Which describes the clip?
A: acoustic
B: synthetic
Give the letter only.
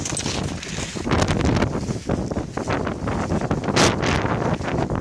A